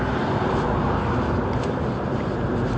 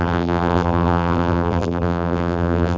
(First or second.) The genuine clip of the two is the first